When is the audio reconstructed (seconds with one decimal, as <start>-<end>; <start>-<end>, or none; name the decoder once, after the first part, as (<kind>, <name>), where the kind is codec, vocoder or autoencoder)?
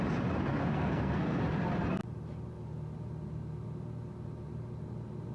0.5-1.4 (codec, SNAC)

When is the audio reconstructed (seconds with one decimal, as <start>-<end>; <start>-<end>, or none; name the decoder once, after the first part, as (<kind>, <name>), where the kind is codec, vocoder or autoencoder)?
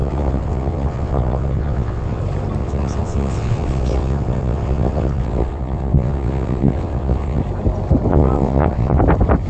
0.0-2.2 (vocoder, WaveNeXt); 2.6-7.4; 8.1-9.0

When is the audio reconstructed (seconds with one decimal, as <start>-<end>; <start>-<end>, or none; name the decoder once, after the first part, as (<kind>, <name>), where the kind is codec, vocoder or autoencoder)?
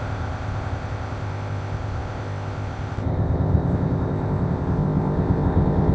0.0-5.9 (codec, ZipCodec)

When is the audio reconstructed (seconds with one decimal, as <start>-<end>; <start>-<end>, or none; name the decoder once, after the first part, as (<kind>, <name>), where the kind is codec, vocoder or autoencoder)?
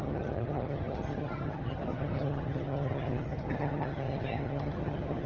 0.0-5.3 (vocoder, HiFi-GAN)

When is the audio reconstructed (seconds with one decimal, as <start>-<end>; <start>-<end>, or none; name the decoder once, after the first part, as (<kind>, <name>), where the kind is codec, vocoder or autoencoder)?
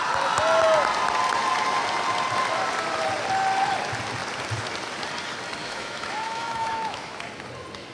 5.6-7.2 (autoencoder, DAC-VAE)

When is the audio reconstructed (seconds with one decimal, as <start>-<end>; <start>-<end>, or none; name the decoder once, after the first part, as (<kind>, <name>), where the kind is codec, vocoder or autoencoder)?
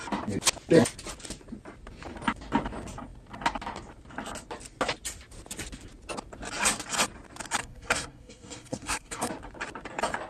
7.6-9.3 (codec, SNAC)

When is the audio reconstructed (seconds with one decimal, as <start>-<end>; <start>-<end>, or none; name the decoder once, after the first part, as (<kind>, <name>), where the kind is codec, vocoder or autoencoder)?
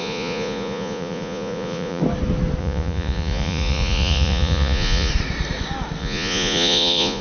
0.0-2.0 (vocoder, Vocos); 2.6-5.1; 6.0-7.2